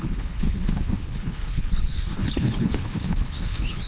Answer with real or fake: fake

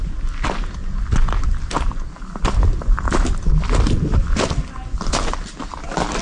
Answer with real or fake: real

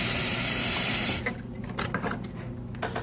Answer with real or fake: real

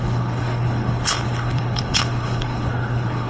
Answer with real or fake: fake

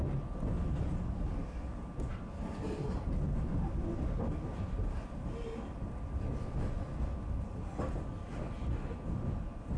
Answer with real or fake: real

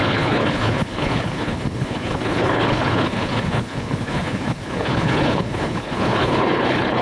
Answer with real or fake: fake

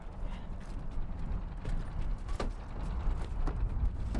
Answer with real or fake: real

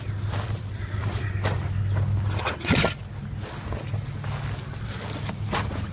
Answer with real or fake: real